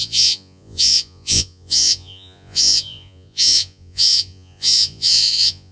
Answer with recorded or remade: remade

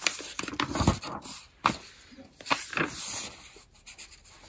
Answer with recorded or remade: recorded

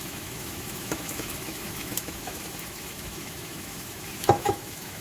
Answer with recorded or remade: remade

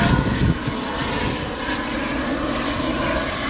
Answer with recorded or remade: recorded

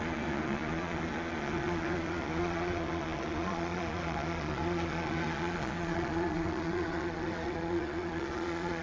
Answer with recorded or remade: remade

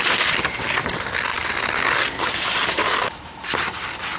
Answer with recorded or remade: recorded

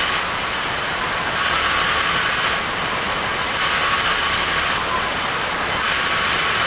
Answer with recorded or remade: recorded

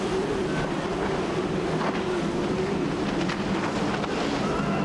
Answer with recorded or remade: recorded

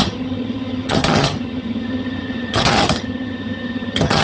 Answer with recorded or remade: remade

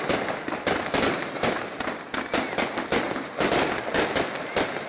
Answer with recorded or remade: recorded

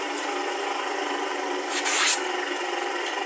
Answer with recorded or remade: recorded